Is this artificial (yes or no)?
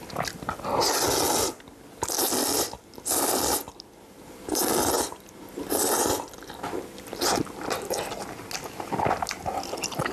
no